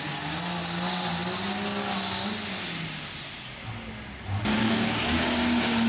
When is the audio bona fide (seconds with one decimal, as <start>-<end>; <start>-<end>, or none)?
0.0-4.6; 5.2-5.9

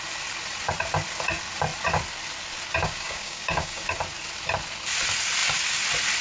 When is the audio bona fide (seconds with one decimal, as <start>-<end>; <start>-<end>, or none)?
0.0-2.8; 3.8-6.2

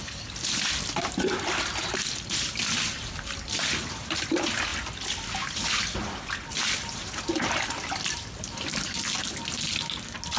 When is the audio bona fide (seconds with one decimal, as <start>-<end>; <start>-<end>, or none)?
0.0-10.4

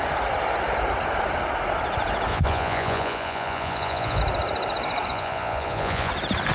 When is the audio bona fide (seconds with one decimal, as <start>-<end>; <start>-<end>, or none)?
0.0-2.3; 4.2-5.1; 6.1-6.5

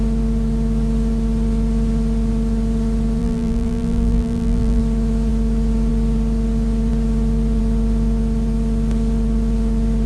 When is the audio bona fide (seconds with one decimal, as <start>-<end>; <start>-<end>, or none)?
0.0-3.2; 4.8-10.1